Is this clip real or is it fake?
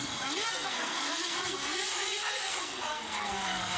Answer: fake